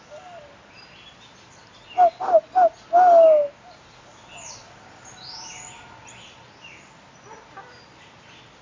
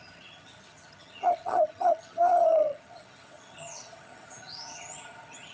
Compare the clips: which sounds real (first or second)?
first